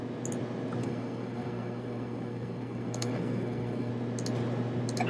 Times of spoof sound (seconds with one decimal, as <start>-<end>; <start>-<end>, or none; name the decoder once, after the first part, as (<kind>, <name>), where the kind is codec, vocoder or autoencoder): 0.8-3.9 (codec, SNAC)